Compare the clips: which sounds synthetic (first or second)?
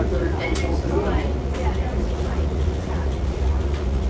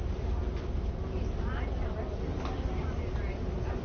first